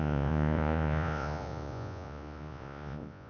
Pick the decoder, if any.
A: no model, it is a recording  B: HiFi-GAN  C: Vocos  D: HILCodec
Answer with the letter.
C